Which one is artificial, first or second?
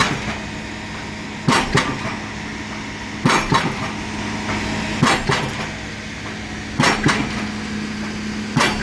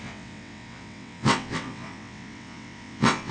second